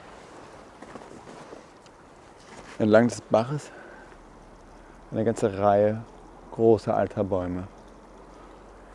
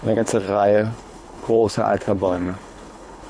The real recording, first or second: first